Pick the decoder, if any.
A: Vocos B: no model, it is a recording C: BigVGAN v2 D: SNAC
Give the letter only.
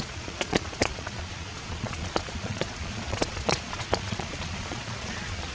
A